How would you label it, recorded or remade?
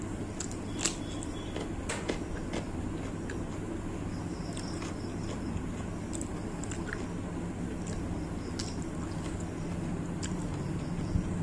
recorded